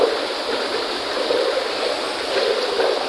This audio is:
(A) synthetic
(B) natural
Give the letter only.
B